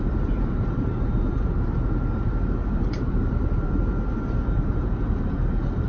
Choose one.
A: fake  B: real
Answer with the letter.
A